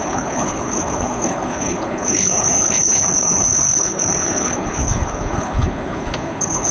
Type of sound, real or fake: fake